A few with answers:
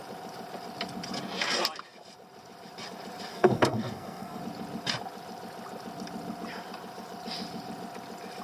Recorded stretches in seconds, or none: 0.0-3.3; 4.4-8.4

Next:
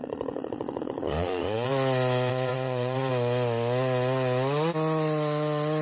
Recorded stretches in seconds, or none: 1.7-2.3; 3.1-5.8